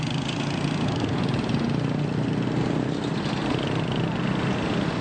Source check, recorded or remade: recorded